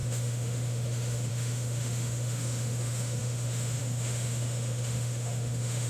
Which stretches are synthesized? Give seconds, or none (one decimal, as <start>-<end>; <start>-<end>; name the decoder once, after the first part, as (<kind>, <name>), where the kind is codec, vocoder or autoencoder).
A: 0.0-5.9 (autoencoder, DAC-VAE)